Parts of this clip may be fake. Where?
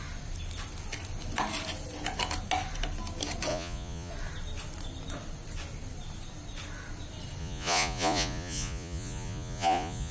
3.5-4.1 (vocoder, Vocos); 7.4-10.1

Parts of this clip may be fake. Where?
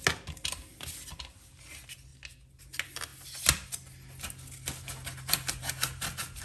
none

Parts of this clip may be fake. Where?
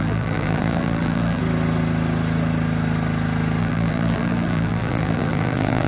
0.0-1.4 (vocoder, BigVGAN v2); 3.6-5.9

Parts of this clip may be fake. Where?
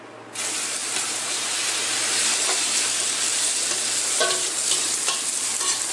0.8-2.9 (vocoder, BigVGAN v2); 3.3-4.9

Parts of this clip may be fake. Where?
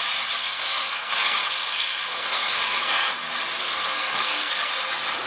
0.4-3.1 (codec, SNAC); 3.6-4.7